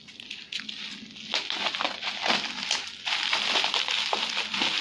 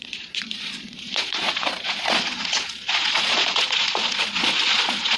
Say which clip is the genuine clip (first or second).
first